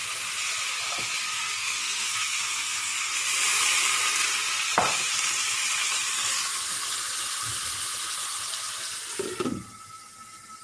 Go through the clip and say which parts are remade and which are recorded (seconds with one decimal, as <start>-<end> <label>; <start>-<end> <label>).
0.0-1.2 recorded; 1.2-3.0 remade; 3.0-10.6 recorded